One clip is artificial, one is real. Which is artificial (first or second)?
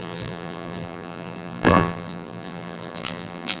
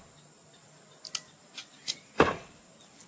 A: first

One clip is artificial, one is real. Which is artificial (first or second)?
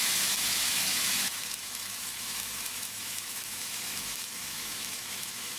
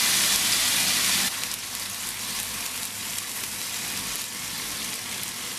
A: first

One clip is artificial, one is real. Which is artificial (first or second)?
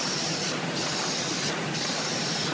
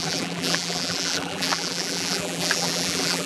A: second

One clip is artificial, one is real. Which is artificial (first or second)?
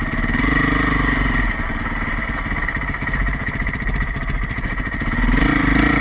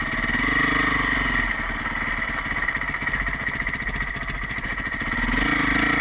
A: first